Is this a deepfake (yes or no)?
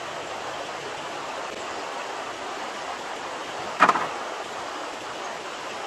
no